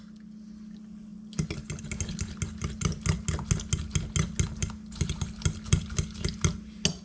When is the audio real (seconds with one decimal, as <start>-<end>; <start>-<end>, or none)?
0.0-7.0